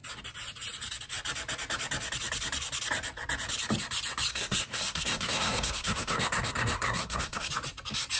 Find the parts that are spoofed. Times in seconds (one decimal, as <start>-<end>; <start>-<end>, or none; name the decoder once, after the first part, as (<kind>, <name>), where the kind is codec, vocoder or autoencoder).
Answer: 4.3-7.5 (codec, SNAC)